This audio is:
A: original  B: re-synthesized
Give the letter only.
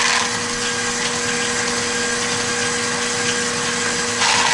A